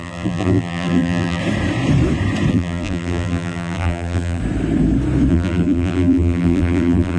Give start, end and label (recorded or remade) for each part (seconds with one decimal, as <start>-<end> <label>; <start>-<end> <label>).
0.0-1.4 remade; 1.4-2.5 recorded; 2.5-4.4 remade; 4.4-5.3 recorded; 5.3-7.2 remade